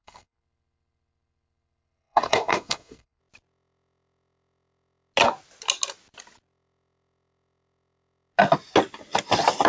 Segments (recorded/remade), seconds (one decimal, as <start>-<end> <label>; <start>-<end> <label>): 0.0-3.2 remade; 3.2-9.7 recorded

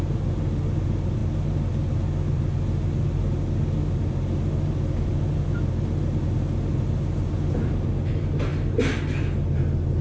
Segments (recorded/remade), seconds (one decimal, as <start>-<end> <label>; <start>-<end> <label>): 0.0-10.0 recorded

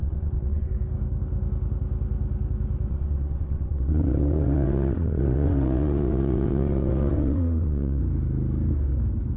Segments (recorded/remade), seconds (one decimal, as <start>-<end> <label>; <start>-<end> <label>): 0.0-0.7 remade; 0.7-2.9 recorded; 2.9-8.0 remade; 8.0-9.4 recorded

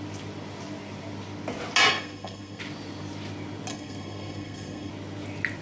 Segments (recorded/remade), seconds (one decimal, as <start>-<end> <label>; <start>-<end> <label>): 0.0-1.9 recorded; 1.9-2.6 remade; 2.6-3.7 recorded; 3.7-4.9 remade; 4.9-5.6 recorded

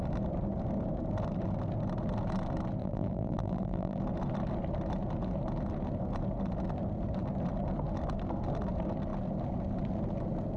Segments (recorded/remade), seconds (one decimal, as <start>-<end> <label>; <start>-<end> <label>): 0.0-2.8 recorded; 2.8-4.0 remade; 4.0-10.6 recorded

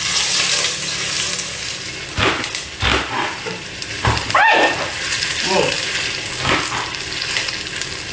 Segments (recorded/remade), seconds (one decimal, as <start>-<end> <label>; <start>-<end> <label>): 0.0-2.9 recorded; 2.9-5.6 remade; 5.6-8.1 recorded